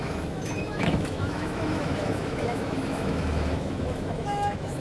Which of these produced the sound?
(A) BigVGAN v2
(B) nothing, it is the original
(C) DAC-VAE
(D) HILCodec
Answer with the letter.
C